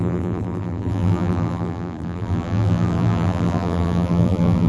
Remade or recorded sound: remade